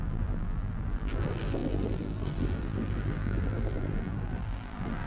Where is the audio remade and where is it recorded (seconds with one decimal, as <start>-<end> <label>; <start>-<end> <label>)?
0.0-5.1 remade

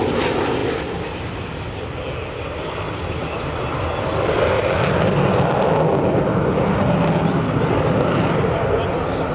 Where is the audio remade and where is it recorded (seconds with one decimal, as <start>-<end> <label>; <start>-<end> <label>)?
0.0-9.3 recorded

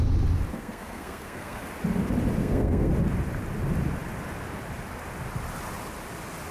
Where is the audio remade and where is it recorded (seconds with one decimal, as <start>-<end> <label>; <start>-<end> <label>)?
0.0-0.5 recorded; 0.5-1.6 remade; 1.6-2.4 recorded; 2.4-2.9 remade; 2.9-6.5 recorded